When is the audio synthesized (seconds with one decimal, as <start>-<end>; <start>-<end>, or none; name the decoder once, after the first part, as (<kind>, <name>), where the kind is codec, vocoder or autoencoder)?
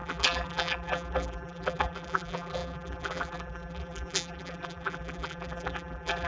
0.0-6.3 (vocoder, BigVGAN v2)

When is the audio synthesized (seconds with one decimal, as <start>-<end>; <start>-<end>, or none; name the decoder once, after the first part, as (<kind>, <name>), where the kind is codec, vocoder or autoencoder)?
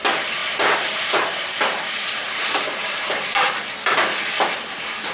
0.4-3.5 (vocoder, BigVGAN v2)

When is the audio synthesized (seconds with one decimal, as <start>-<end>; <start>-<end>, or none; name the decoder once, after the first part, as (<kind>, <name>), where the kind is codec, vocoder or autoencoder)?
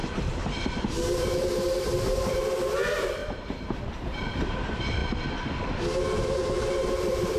0.8-5.0 (vocoder, BigVGAN v2); 6.3-7.4